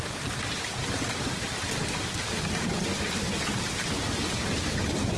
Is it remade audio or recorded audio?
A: recorded